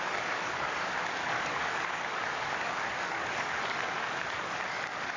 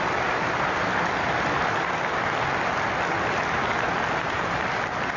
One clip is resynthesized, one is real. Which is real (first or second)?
second